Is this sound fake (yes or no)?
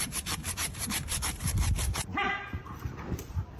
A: yes